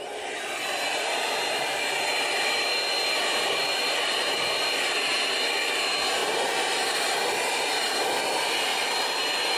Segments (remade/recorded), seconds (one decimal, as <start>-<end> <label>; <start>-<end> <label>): 0.0-6.2 recorded; 6.2-8.1 remade; 8.1-9.6 recorded

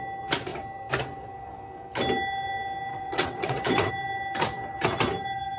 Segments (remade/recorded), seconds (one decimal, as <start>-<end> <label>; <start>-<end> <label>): 0.0-2.9 recorded; 2.9-3.9 remade; 3.9-5.6 recorded

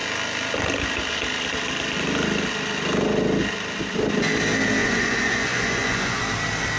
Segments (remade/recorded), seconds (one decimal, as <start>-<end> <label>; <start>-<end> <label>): 0.0-4.8 recorded; 4.8-6.2 remade; 6.2-6.8 recorded

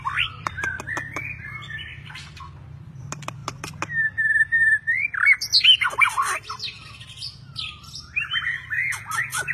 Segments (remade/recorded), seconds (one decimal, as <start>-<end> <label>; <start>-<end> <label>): 0.0-1.9 recorded; 1.9-3.0 remade; 3.0-9.5 recorded

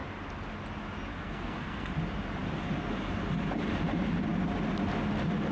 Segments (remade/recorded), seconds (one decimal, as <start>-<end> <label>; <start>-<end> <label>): 0.0-1.1 recorded; 1.1-1.9 remade; 1.9-5.5 recorded

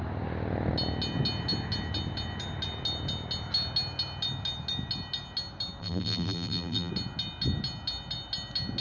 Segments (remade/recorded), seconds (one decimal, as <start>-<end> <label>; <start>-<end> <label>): 0.0-5.8 recorded; 5.8-6.9 remade; 6.9-8.8 recorded

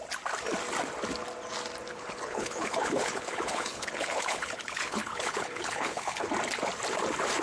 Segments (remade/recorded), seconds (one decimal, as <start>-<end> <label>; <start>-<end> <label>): 0.0-1.9 recorded; 1.9-6.3 remade; 6.3-7.4 recorded

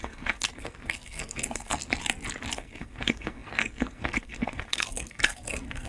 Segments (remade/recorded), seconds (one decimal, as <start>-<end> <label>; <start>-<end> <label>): 0.0-1.8 remade; 1.8-2.5 recorded; 2.5-5.9 remade